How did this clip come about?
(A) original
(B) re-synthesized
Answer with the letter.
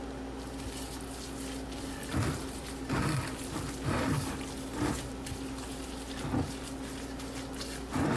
A